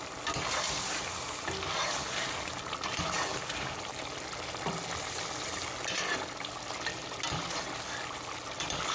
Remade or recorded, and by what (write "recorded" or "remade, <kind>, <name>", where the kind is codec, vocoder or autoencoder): recorded